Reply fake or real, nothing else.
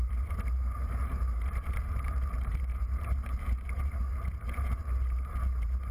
fake